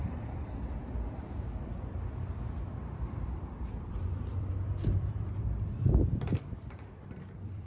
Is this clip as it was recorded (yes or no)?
no